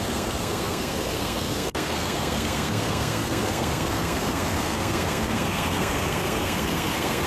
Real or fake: fake